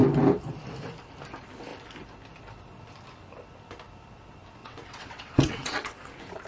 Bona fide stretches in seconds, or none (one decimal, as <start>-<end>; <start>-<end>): 0.0-4.6; 6.0-6.5